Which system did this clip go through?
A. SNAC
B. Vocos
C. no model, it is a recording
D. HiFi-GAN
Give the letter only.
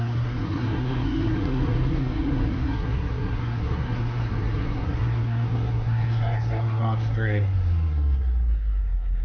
A